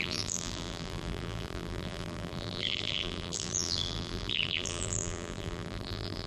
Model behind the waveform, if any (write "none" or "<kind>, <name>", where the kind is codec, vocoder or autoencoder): vocoder, BigVGAN v2